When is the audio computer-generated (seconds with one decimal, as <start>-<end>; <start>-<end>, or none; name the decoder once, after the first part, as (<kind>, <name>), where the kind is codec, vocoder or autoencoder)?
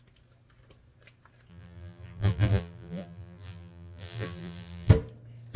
1.5-4.9 (vocoder, BigVGAN v2)